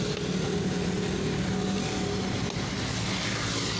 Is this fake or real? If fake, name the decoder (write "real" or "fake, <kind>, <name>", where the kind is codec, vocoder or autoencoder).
real